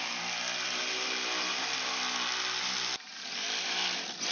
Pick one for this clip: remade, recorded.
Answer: recorded